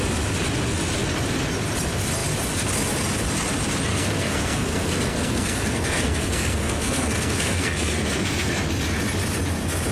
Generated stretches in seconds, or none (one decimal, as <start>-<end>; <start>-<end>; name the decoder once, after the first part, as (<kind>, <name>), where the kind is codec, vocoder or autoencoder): 3.9-8.5 (codec, SNAC)